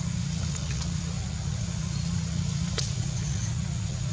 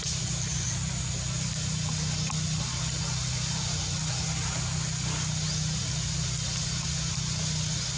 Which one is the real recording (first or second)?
second